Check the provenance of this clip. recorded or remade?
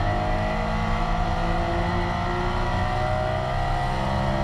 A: recorded